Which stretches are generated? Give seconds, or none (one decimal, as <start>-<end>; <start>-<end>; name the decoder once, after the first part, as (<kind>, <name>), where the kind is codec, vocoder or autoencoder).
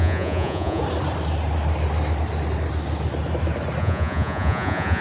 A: 0.0-0.8 (vocoder, Vocos); 3.8-5.0